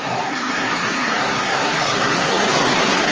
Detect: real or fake fake